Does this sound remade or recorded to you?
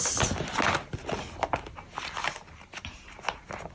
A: recorded